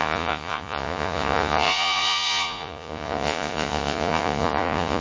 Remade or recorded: remade